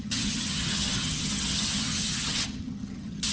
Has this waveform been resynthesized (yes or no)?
yes